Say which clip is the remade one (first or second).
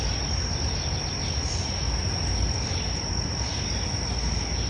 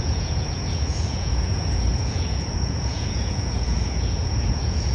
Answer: second